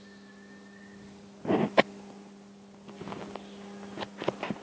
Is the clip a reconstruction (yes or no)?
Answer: no